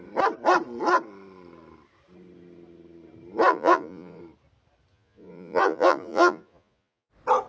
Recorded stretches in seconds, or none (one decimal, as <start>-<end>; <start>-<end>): 0.0-3.5; 4.2-4.9; 7.1-7.5